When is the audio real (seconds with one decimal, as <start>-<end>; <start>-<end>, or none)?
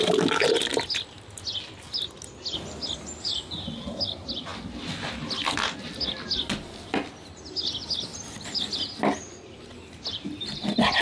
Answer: 0.0-8.1; 8.6-11.0